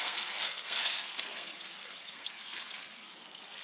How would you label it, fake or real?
fake